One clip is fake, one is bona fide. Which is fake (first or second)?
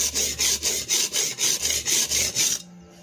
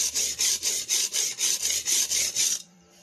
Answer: second